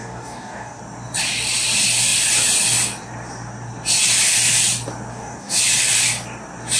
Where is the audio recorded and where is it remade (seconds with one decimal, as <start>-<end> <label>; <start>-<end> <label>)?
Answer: 0.0-0.8 remade; 0.8-5.1 recorded; 5.1-5.6 remade; 5.6-6.8 recorded